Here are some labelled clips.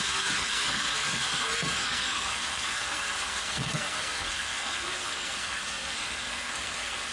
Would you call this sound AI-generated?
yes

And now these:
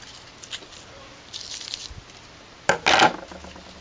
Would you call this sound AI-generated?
no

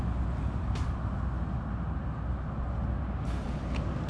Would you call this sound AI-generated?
no